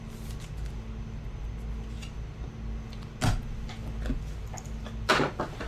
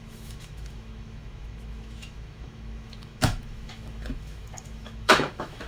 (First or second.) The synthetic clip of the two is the second